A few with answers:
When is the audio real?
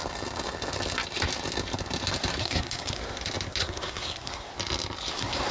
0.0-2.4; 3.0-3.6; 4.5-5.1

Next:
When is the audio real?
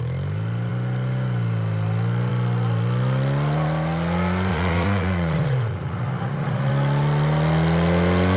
0.0-4.5; 6.7-8.4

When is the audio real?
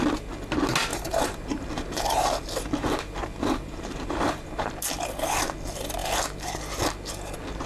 0.0-0.9; 4.7-7.7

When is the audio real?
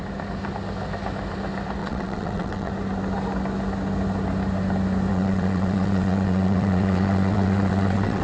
0.0-1.8; 2.7-5.1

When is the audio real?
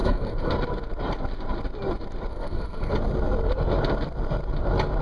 0.5-2.3; 2.9-5.0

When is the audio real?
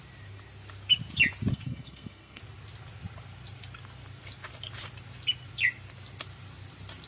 0.0-1.5; 2.4-7.1